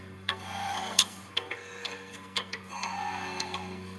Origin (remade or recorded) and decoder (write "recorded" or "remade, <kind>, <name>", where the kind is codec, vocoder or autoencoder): remade, codec, SNAC